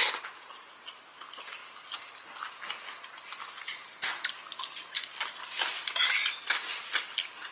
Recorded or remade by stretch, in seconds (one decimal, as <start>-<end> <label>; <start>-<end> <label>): 0.0-7.5 recorded